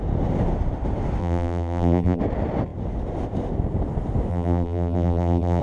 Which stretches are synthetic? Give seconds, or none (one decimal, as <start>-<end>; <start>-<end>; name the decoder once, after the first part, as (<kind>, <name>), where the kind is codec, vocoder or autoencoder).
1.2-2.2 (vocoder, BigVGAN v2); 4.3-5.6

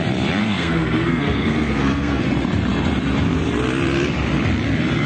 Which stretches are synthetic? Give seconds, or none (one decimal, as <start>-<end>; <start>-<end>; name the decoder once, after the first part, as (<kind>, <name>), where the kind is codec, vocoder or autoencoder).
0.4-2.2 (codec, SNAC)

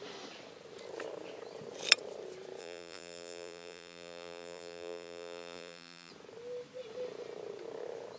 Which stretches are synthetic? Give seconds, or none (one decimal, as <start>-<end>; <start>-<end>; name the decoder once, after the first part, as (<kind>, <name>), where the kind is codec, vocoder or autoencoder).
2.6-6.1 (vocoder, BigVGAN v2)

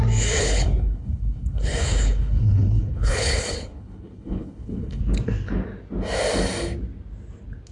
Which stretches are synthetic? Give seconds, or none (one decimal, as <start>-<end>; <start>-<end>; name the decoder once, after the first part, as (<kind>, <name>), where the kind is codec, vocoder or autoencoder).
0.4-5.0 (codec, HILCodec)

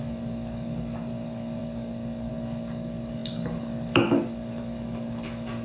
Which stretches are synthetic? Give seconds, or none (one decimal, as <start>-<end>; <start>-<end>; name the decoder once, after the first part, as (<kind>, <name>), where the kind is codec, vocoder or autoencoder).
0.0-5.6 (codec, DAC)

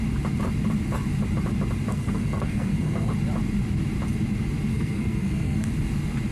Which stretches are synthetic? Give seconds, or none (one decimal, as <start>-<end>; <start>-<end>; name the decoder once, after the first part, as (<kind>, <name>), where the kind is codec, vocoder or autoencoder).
1.9-3.1 (codec, SNAC); 4.7-5.7

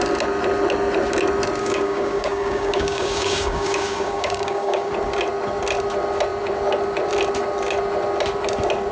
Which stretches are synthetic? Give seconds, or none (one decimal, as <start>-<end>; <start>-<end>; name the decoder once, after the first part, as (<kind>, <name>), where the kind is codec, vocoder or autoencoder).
1.6-4.9 (codec, DAC)

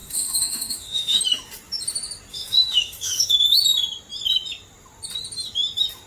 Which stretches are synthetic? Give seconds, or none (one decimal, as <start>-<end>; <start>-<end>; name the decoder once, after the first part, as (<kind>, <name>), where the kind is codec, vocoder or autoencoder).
0.0-1.2 (autoencoder, DAC-VAE); 2.3-3.6